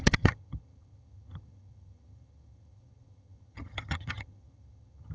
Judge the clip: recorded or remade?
remade